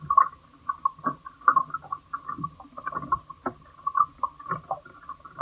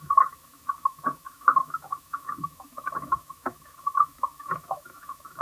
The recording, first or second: first